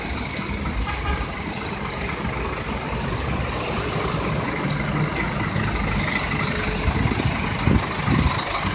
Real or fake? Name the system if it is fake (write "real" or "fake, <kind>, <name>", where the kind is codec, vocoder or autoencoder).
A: real